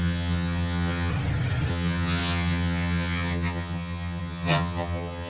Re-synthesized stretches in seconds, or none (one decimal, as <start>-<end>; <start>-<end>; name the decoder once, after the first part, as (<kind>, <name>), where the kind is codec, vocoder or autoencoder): 0.0-1.1 (vocoder, HiFi-GAN); 1.7-5.3